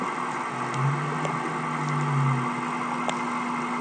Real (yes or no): yes